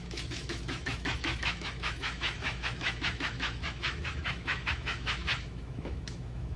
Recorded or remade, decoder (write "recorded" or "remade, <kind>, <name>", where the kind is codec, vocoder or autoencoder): remade, autoencoder, DAC-VAE